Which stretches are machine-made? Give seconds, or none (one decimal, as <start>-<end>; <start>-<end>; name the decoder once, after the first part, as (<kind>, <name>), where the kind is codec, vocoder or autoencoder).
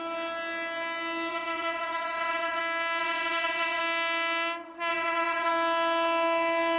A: 1.3-2.6 (vocoder, WaveNeXt); 3.0-3.8; 4.9-5.5